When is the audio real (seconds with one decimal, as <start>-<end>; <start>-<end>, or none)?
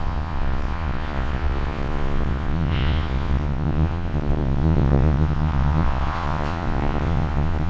none